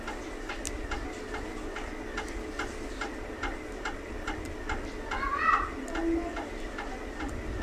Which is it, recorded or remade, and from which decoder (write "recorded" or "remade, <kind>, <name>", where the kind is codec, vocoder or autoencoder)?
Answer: recorded